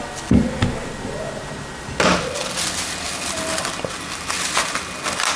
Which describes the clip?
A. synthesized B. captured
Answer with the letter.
B